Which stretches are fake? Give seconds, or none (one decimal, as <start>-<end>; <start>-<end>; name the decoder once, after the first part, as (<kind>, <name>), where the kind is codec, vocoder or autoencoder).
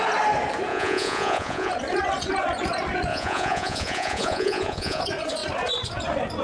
0.7-1.7 (vocoder, Vocos); 3.1-5.0